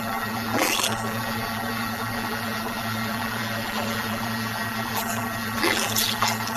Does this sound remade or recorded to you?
remade